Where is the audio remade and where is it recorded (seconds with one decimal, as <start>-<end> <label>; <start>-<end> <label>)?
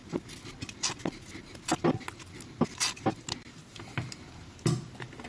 0.0-5.3 recorded